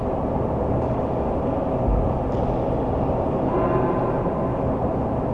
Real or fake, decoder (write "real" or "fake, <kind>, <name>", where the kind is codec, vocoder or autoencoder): real